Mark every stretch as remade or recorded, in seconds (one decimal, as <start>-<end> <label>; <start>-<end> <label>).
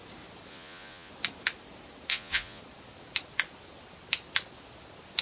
0.0-0.5 recorded; 0.5-1.1 remade; 1.1-2.1 recorded; 2.1-2.6 remade; 2.6-5.2 recorded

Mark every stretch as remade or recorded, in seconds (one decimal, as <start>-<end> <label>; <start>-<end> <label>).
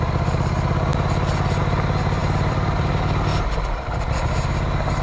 0.0-2.2 recorded; 2.2-2.9 remade; 2.9-3.3 recorded; 3.3-4.0 remade; 4.0-5.0 recorded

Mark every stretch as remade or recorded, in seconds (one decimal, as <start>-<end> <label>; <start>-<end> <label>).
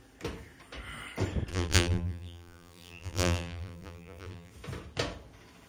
0.0-1.5 recorded; 1.5-4.5 remade; 4.5-5.7 recorded